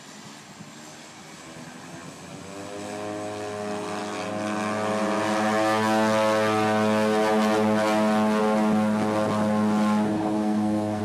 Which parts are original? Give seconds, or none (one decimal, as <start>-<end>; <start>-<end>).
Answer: 0.0-10.1

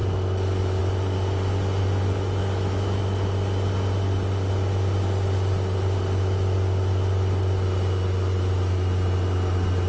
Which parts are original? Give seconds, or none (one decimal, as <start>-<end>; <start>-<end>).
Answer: 0.0-2.4; 3.0-9.9

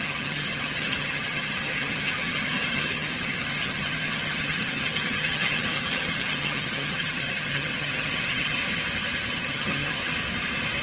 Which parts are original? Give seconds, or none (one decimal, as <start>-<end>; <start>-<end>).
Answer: 8.6-9.4; 10.0-10.8

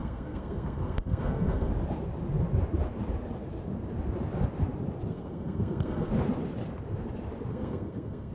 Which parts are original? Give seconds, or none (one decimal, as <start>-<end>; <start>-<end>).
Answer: 1.7-5.1; 6.1-7.5

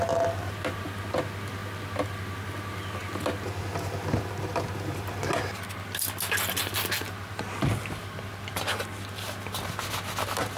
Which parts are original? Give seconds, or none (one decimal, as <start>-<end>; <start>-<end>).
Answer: 0.0-10.6

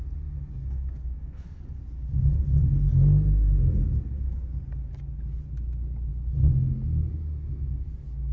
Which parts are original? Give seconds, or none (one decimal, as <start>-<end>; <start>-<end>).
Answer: 0.0-0.6; 1.6-8.3

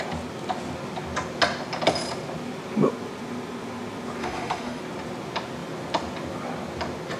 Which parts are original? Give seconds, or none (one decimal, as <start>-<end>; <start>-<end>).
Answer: 0.0-4.2; 4.8-7.2